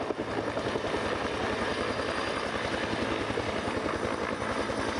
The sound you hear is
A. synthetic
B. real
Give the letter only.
B